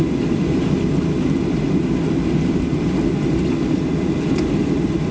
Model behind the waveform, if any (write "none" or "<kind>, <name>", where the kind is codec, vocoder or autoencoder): none